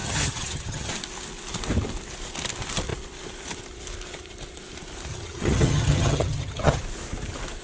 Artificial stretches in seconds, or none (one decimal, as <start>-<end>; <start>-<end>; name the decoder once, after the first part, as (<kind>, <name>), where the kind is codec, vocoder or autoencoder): 0.0-0.9 (vocoder, HiFi-GAN); 5.1-6.8